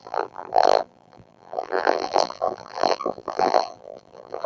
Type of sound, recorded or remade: remade